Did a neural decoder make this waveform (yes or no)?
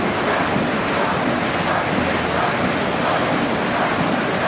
no